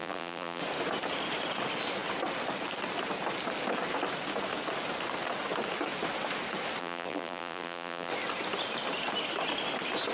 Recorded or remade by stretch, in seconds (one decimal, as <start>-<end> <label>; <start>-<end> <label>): 0.0-0.6 remade; 0.6-6.8 recorded; 6.8-8.1 remade; 8.1-10.1 recorded